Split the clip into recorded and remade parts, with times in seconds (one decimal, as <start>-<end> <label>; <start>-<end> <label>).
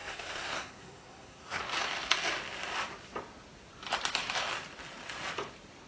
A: 0.0-1.6 remade; 1.6-5.9 recorded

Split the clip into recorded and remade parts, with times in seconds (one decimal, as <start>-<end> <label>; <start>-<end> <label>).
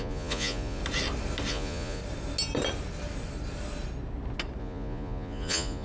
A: 0.0-0.8 remade; 0.8-1.5 recorded; 1.5-2.0 remade; 2.0-4.6 recorded; 4.6-5.8 remade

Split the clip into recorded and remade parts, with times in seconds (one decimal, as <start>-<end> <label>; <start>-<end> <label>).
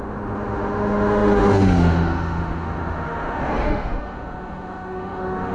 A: 0.0-5.5 remade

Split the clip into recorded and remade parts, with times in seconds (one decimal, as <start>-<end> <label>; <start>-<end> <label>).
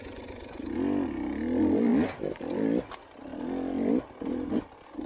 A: 0.0-5.1 recorded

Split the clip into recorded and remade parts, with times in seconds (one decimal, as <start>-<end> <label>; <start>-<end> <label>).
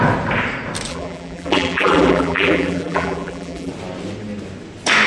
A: 0.0-0.9 recorded; 0.9-3.7 remade; 3.7-5.1 recorded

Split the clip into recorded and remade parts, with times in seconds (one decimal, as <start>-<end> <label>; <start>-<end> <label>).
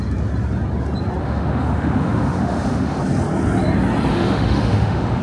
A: 0.0-1.2 recorded; 1.2-3.0 remade; 3.0-4.1 recorded; 4.1-5.2 remade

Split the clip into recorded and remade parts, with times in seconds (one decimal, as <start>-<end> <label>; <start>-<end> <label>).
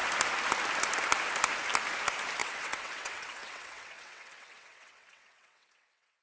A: 0.0-2.4 recorded; 2.4-6.2 remade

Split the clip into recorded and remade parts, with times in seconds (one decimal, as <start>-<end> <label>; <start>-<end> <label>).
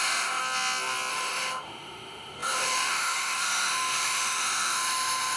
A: 0.0-0.4 remade; 0.4-1.1 recorded; 1.1-5.4 remade